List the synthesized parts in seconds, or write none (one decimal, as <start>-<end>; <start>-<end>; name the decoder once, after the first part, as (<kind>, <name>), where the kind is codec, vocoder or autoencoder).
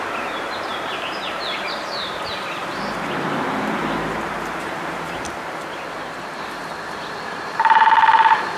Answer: 0.0-6.6 (vocoder, BigVGAN v2); 7.1-8.6